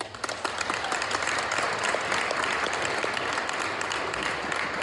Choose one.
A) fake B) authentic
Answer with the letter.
B